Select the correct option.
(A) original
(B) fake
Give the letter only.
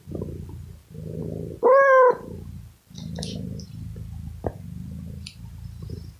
A